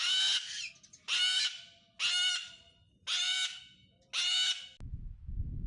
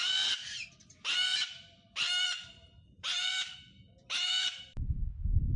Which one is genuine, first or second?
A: first